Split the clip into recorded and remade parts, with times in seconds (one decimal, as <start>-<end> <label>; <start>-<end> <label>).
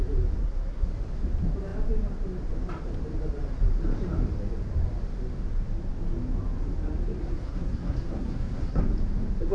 0.0-0.4 recorded; 0.4-0.9 remade; 0.9-7.2 recorded; 7.2-8.8 remade; 8.8-9.5 recorded